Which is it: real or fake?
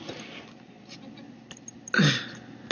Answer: real